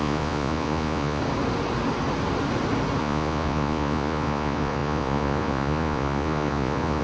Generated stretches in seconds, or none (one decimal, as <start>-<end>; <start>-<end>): 0.0-1.2; 3.0-7.0